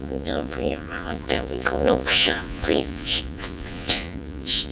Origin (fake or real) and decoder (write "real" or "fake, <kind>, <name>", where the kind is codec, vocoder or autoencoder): fake, vocoder, Vocos